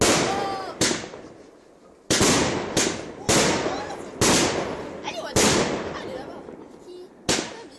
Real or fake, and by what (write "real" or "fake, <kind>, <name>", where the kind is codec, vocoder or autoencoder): real